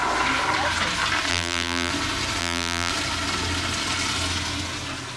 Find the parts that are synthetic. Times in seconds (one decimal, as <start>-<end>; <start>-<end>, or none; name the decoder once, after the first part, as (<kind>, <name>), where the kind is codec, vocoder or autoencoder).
1.3-1.9 (vocoder, BigVGAN v2); 2.4-2.9